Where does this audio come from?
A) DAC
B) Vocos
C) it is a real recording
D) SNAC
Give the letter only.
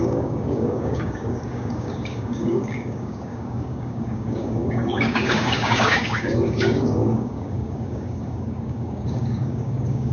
A